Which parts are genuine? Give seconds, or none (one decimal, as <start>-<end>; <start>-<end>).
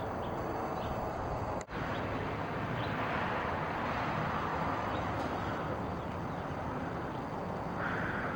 0.0-1.1; 1.6-4.5; 5.2-8.4